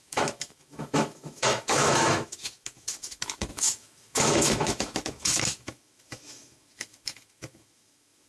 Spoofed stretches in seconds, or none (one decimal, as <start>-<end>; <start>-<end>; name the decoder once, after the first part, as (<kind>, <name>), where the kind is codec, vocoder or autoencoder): 0.0-8.3 (autoencoder, DAC-VAE)